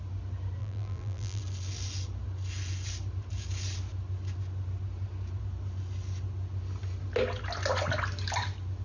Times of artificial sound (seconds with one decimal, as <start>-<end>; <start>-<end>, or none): 0.6-1.4

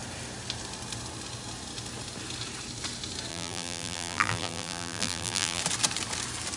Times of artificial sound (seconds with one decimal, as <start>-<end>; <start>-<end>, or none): 3.3-5.6

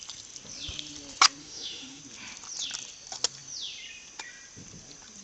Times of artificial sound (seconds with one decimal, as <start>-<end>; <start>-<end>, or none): 1.4-2.0

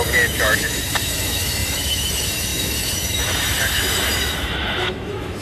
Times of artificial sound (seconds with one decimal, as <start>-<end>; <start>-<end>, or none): 0.0-5.4